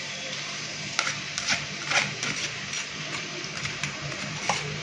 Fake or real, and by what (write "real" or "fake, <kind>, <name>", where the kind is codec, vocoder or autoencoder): fake, vocoder, BigVGAN v2